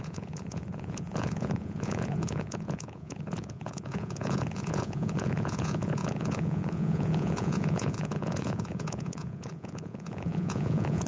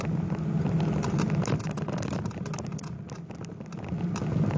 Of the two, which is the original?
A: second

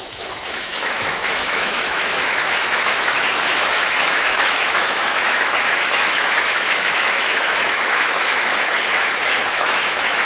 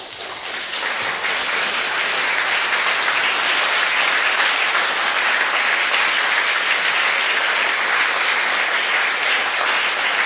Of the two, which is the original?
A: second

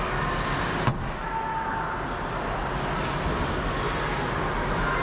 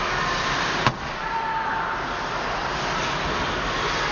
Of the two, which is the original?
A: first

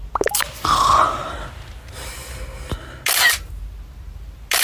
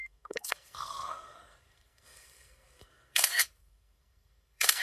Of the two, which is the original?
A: first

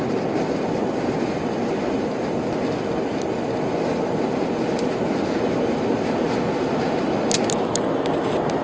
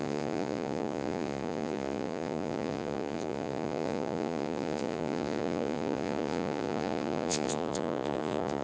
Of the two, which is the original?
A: first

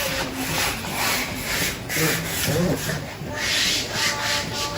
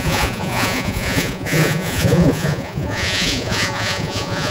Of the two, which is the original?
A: first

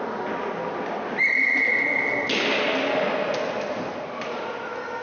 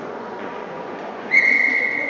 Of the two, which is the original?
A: first